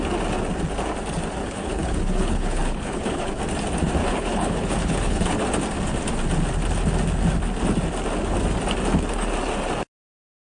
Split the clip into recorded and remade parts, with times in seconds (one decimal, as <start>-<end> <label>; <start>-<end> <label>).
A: 0.0-1.4 recorded; 1.4-3.4 remade; 3.4-4.0 recorded; 4.0-5.4 remade; 5.4-10.4 recorded